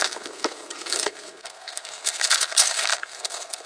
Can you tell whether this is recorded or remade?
remade